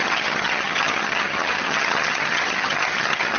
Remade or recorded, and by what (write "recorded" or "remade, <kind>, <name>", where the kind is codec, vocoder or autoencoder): remade, vocoder, HiFi-GAN